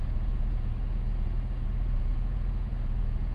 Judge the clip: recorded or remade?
remade